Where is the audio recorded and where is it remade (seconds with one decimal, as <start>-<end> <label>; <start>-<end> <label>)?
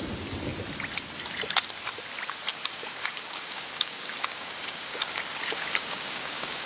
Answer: 0.0-2.5 recorded; 2.5-6.7 remade